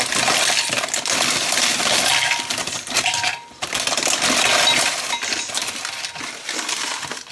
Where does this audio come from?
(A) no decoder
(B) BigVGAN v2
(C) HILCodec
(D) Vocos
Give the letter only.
A